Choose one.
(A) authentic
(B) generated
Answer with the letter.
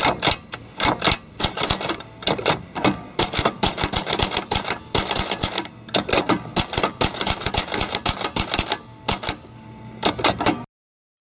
A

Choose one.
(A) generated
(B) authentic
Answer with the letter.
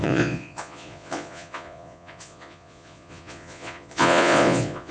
A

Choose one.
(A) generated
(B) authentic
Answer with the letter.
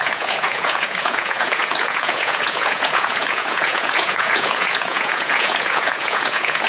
A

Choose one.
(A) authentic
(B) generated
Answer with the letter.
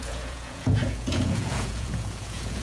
B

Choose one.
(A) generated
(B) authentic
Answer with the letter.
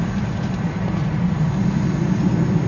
B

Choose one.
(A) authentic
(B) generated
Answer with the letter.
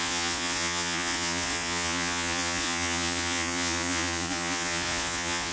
B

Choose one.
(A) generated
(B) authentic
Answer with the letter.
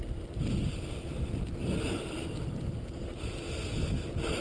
B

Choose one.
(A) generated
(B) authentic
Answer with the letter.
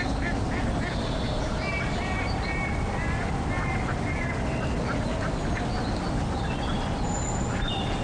B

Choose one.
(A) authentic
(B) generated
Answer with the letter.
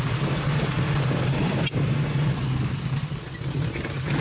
A